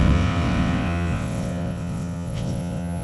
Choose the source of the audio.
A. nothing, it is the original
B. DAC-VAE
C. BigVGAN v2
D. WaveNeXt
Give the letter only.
D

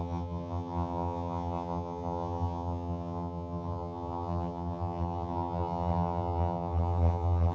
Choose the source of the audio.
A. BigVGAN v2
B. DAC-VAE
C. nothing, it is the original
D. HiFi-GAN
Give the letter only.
D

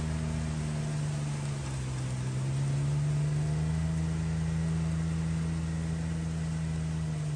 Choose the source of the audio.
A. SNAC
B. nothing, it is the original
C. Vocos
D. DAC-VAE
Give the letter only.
B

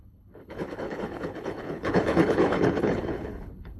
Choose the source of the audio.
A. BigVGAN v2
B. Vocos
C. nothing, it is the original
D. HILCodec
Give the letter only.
D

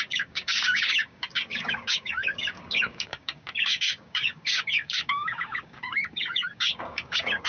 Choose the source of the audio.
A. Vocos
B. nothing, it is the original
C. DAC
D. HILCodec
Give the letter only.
C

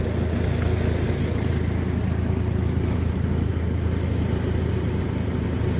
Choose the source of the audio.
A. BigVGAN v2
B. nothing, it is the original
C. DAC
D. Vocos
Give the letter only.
B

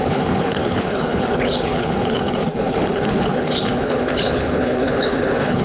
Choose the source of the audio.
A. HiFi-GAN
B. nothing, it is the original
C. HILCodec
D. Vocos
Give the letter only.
C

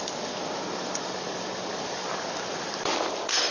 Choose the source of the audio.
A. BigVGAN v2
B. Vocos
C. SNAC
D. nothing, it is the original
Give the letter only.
D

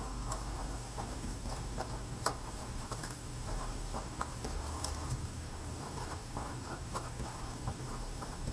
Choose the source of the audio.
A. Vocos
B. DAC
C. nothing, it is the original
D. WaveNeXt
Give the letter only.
B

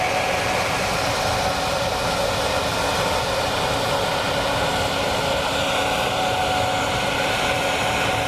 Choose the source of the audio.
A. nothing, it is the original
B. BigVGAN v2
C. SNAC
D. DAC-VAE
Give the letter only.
A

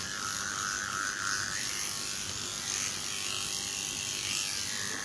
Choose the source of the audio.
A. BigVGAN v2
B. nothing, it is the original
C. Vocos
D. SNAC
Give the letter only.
B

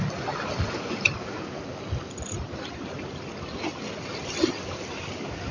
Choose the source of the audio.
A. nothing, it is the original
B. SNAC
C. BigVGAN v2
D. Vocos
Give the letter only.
A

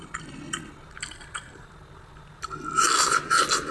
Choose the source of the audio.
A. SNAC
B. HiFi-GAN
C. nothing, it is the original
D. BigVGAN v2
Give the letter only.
C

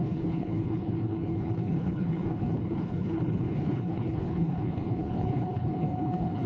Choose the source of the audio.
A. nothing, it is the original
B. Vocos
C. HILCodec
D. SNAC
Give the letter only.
C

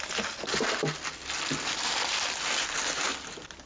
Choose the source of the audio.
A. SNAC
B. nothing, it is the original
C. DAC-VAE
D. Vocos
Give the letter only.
B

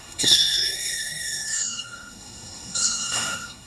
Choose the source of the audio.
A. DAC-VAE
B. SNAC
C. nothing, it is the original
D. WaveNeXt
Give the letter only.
B